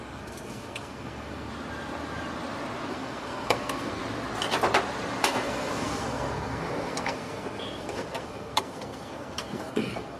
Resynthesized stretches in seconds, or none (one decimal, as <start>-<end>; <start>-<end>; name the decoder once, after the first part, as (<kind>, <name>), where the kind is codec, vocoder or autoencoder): 0.0-1.5 (codec, SNAC); 2.9-4.0; 5.2-10.2